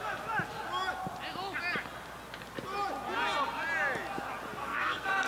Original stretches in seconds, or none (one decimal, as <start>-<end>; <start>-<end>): 0.0-4.6